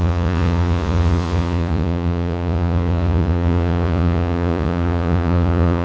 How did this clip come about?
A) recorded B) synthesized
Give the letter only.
B